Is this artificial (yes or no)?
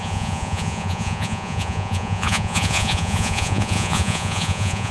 yes